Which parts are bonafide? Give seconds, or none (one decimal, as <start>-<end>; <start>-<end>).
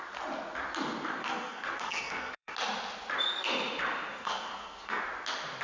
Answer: 0.0-1.2; 2.5-4.1; 5.0-5.6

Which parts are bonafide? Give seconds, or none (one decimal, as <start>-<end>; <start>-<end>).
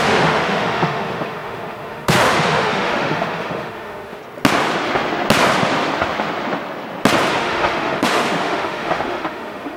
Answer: 4.2-7.4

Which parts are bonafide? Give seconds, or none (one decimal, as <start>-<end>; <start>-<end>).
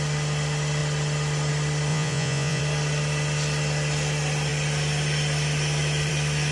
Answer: 0.0-1.9; 2.6-6.5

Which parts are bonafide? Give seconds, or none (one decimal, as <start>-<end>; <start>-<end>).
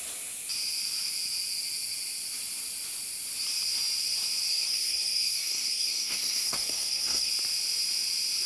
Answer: 0.0-4.5; 7.3-8.5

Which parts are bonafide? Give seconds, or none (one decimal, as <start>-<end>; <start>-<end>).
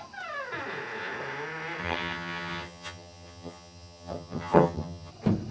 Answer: 0.0-1.8; 5.1-5.5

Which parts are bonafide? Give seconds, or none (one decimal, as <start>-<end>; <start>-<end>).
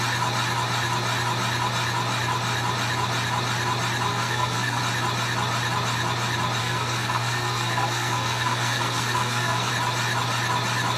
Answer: 0.0-4.1; 4.8-6.6; 9.7-11.0